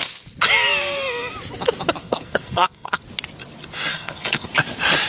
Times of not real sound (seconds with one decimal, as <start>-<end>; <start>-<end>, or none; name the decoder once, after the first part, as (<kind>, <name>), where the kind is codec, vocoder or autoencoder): 2.0-3.0 (codec, SNAC); 3.9-4.5